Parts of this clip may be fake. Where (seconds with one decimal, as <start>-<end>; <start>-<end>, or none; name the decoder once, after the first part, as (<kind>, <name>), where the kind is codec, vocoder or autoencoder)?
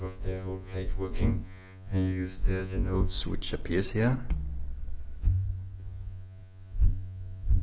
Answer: 0.0-3.2 (vocoder, Vocos); 5.2-7.6